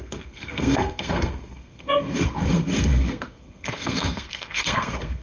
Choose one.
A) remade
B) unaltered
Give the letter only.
A